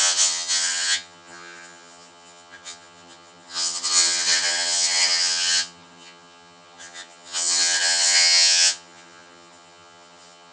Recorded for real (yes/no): no